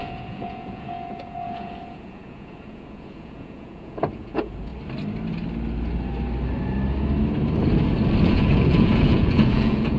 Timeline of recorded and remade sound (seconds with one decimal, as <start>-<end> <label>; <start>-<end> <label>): 0.0-4.7 remade; 4.7-8.2 recorded; 8.2-10.0 remade